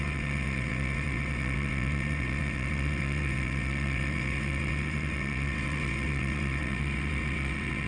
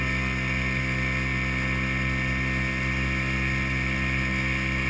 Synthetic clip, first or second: first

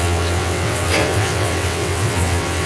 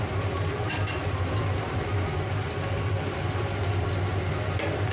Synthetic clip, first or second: first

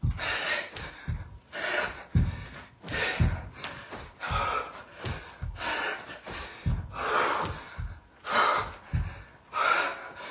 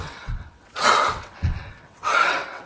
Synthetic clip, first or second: second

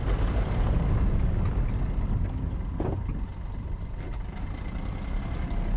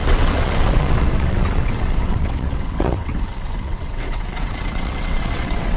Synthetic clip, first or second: second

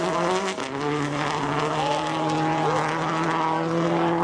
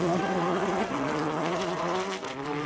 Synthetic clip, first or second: second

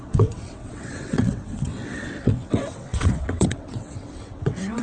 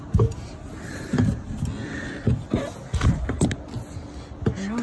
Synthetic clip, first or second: first